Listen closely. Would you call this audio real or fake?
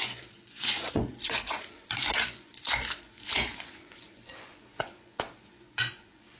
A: fake